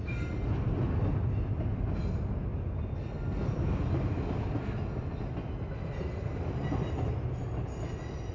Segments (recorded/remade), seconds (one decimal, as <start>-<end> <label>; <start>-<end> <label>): 0.0-8.3 recorded